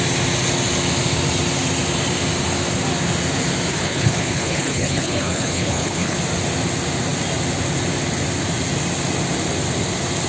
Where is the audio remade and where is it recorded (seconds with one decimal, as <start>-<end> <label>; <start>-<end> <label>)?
0.0-3.7 recorded; 3.7-6.2 remade; 6.2-10.3 recorded